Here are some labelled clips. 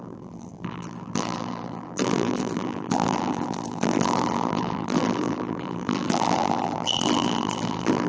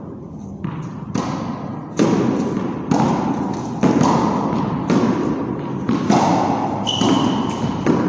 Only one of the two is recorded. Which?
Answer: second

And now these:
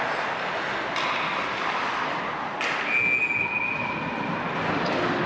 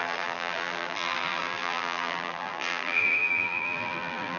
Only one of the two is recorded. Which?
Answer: first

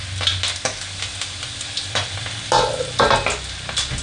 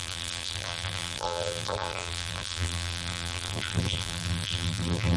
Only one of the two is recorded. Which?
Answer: first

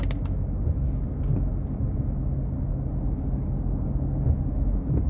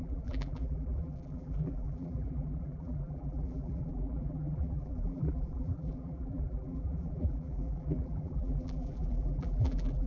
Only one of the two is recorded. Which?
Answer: first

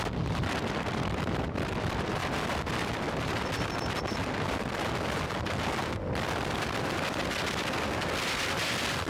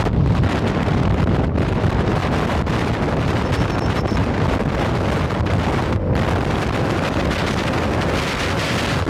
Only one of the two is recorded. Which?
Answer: second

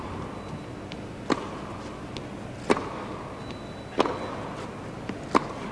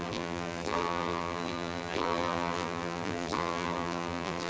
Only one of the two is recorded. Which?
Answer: first